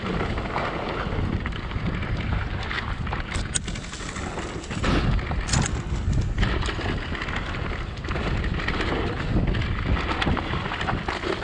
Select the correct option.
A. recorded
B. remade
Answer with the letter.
A